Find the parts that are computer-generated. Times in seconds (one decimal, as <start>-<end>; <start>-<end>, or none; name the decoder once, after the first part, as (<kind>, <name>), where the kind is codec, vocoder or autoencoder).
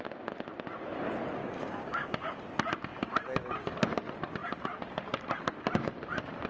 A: 1.4-2.4 (codec, DAC)